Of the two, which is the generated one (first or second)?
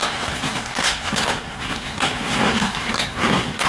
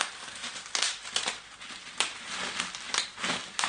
first